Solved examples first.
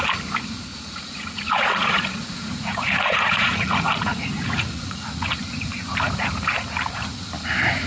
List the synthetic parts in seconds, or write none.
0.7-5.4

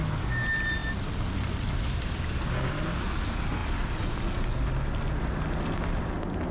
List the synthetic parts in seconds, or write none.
none

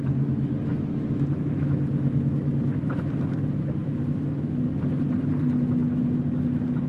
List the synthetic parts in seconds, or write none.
0.7-2.8; 3.8-4.5

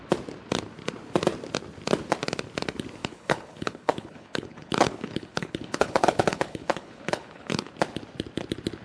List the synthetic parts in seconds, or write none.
3.0-7.7

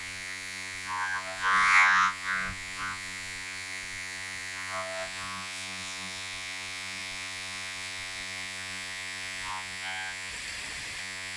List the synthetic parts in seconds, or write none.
0.0-10.3; 11.0-11.4